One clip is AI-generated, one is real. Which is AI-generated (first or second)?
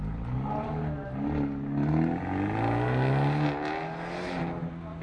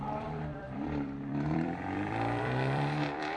second